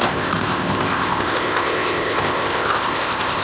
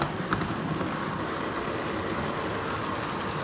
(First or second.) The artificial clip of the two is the first